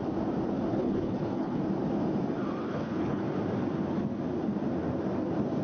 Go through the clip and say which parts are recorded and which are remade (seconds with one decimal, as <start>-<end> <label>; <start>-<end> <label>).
0.0-0.7 recorded; 0.7-1.6 remade; 1.6-2.6 recorded; 2.6-3.2 remade; 3.2-5.6 recorded